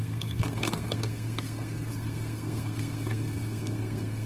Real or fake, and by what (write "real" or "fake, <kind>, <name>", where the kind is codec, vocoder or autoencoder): fake, codec, SNAC